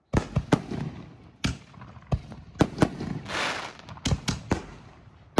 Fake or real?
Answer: real